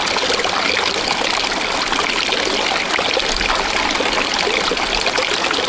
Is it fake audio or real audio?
real